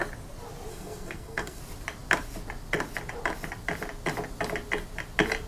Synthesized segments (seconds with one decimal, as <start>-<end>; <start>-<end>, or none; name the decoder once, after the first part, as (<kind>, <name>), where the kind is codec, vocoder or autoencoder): 0.7-1.6 (codec, SNAC)